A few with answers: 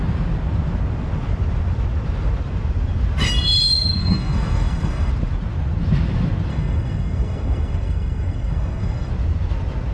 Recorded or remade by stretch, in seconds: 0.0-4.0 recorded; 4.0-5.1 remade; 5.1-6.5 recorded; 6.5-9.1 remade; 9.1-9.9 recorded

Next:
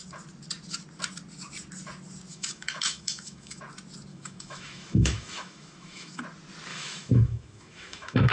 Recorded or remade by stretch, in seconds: 0.0-2.3 recorded; 2.3-3.6 remade; 3.6-4.1 recorded; 4.1-6.2 remade; 6.2-6.7 recorded; 6.7-8.3 remade

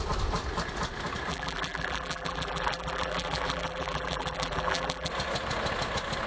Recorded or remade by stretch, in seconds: 0.0-1.3 recorded; 1.3-5.1 remade; 5.1-6.3 recorded

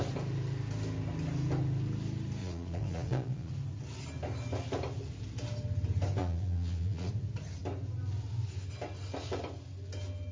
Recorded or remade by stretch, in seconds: 0.0-2.4 recorded; 2.4-3.5 remade; 3.5-6.2 recorded; 6.2-7.1 remade; 7.1-10.3 recorded

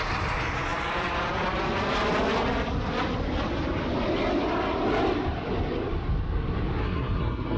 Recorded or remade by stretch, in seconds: 0.0-6.8 recorded; 6.8-7.6 remade

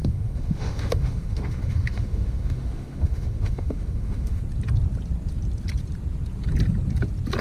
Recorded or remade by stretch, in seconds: 0.0-4.4 remade; 4.4-7.4 recorded

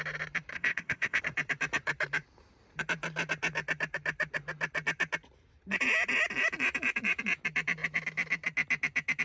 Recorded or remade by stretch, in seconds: 0.0-0.5 recorded; 0.5-1.2 remade; 1.2-9.2 recorded